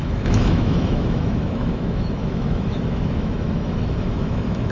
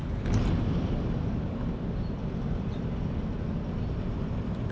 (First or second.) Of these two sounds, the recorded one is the second